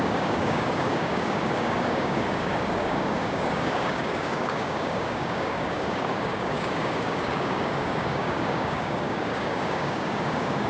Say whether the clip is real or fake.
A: fake